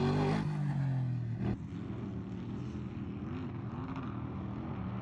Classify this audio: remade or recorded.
recorded